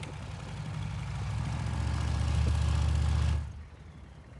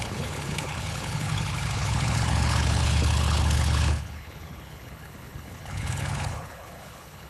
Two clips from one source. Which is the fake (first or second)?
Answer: second